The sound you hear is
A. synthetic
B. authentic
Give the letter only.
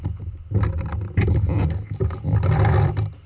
B